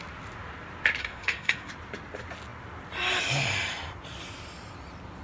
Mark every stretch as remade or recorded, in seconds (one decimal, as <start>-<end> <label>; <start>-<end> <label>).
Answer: 0.0-1.0 recorded; 1.0-1.7 remade; 1.7-5.2 recorded